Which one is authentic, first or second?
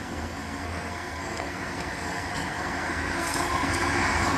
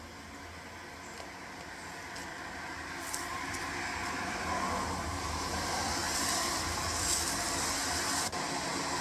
second